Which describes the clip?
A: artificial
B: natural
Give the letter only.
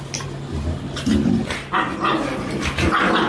B